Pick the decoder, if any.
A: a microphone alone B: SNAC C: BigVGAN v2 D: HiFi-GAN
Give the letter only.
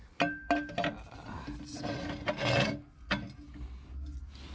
A